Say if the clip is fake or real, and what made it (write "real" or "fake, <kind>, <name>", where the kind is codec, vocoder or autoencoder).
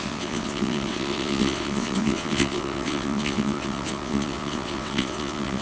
fake, vocoder, WaveNeXt